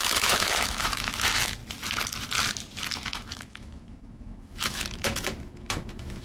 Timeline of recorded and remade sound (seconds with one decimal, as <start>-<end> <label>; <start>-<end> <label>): 0.0-1.6 remade; 1.6-2.9 recorded; 2.9-6.2 remade